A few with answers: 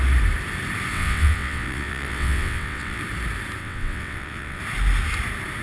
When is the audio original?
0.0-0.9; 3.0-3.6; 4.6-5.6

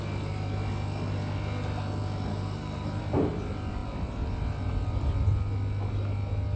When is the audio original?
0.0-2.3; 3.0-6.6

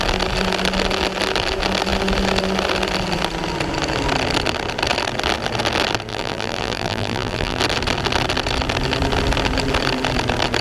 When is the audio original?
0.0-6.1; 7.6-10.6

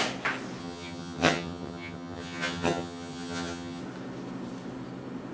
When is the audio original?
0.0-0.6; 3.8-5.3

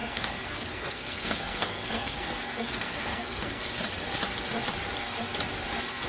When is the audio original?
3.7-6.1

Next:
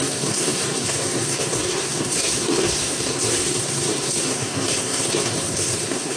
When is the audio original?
none

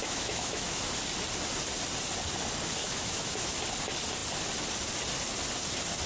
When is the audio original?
0.8-2.8; 3.6-6.1